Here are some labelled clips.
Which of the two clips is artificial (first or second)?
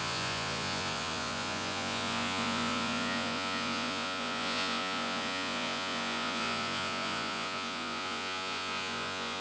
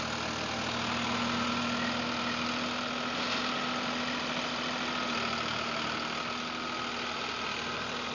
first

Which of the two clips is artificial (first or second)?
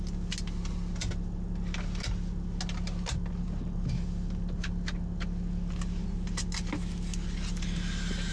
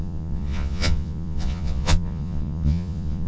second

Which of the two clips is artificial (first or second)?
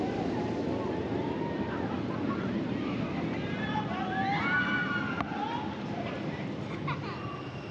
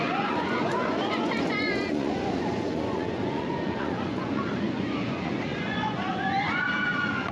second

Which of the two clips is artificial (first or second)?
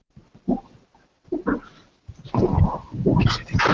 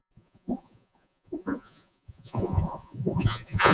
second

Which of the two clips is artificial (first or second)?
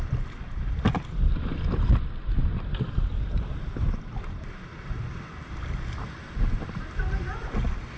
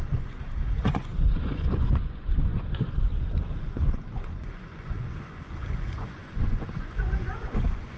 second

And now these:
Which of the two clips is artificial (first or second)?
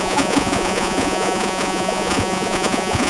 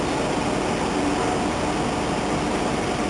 first